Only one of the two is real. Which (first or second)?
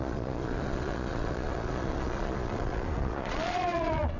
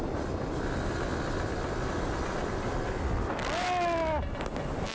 second